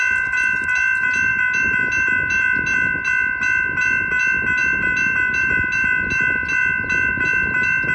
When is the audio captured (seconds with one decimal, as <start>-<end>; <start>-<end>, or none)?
0.0-7.9